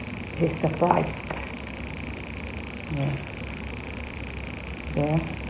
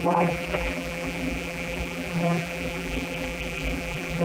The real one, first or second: first